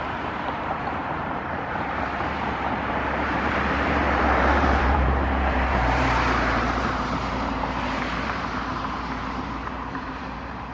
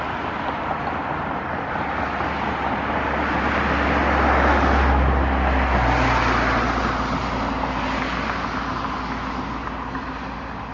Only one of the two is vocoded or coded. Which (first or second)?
first